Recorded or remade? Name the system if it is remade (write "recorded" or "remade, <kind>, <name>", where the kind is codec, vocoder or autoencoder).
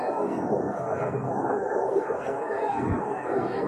remade, codec, SNAC